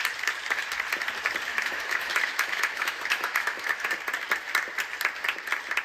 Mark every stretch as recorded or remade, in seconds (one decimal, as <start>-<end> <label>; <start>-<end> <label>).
0.0-1.5 recorded; 1.5-3.9 remade; 3.9-5.8 recorded